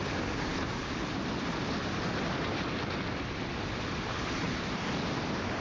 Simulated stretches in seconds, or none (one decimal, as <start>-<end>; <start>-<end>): none